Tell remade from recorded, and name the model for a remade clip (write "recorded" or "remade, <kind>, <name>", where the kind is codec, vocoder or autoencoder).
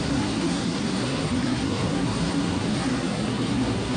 remade, codec, SNAC